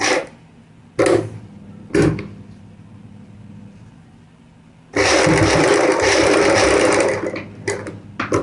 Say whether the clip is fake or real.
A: real